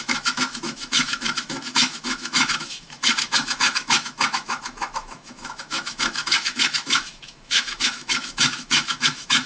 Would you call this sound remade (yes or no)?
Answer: yes